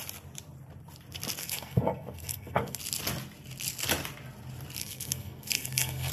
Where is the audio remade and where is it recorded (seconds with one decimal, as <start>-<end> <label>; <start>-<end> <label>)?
0.0-1.4 recorded; 1.4-2.8 remade; 2.8-4.8 recorded; 4.8-6.1 remade